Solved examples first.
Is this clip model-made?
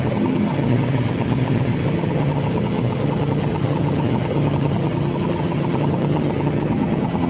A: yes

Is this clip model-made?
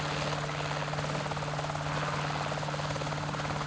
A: no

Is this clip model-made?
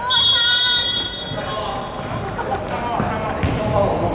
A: no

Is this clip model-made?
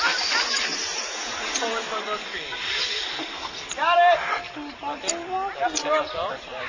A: no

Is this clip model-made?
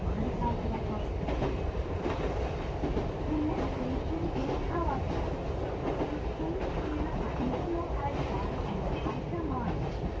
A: no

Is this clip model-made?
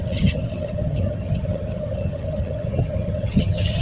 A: yes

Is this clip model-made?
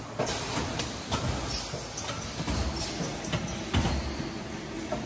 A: no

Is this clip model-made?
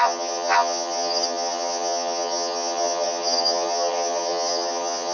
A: yes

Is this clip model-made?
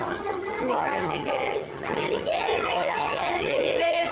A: yes